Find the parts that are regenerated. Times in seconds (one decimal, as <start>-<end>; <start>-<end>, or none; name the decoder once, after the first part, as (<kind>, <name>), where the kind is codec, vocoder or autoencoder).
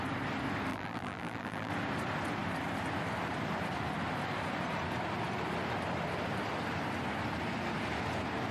0.7-1.7 (vocoder, BigVGAN v2)